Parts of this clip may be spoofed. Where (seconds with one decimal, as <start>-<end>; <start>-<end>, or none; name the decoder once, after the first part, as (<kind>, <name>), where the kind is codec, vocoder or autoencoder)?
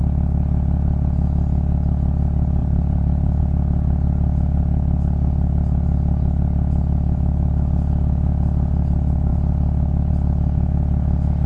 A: 2.6-3.4 (vocoder, BigVGAN v2)